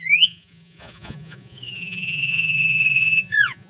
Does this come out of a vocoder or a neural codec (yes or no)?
yes